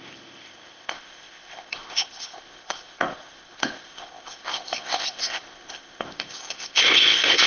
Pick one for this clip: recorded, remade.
remade